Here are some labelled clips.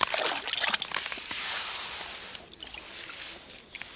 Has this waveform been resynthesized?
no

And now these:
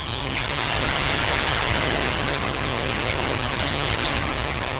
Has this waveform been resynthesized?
yes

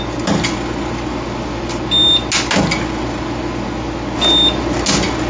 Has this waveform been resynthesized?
no